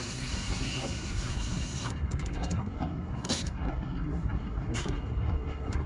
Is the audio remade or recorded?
remade